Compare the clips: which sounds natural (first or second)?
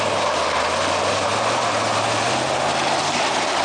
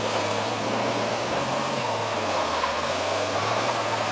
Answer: first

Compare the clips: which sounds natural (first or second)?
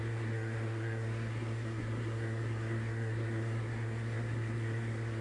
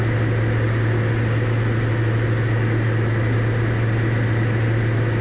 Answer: second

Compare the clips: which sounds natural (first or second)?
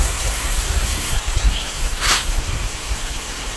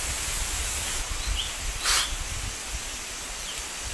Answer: second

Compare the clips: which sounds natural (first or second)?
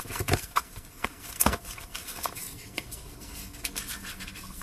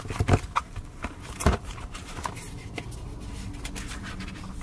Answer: second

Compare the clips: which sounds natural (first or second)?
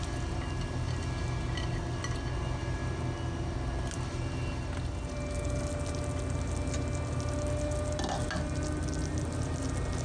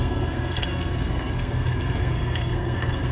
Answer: first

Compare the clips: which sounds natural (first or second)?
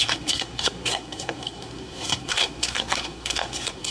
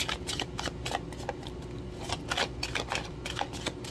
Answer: second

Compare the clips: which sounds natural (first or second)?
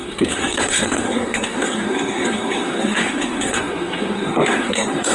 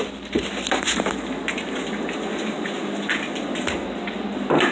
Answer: second